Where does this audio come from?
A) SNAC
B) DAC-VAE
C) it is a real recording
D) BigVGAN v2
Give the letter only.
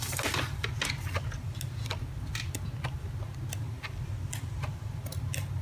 C